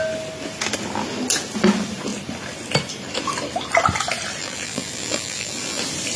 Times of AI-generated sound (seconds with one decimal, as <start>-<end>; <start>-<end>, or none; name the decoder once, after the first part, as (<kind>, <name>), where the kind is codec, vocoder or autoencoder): 4.4-5.8 (vocoder, BigVGAN v2)